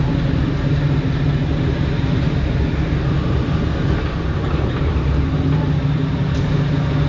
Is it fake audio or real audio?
real